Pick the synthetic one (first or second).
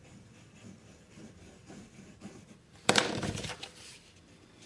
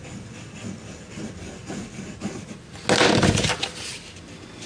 first